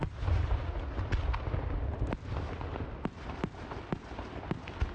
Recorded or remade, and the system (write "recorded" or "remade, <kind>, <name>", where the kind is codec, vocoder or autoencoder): recorded